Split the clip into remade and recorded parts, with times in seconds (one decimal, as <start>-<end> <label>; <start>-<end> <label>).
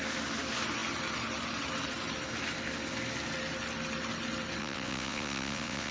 0.0-4.6 recorded; 4.6-5.9 remade